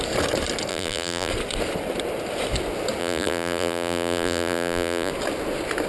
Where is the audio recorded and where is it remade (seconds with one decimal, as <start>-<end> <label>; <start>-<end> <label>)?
0.0-0.7 recorded; 0.7-1.3 remade; 1.3-3.0 recorded; 3.0-5.1 remade; 5.1-5.9 recorded